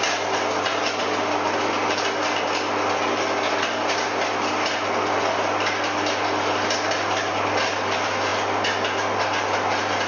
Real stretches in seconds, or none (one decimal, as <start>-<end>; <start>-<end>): 0.0-10.1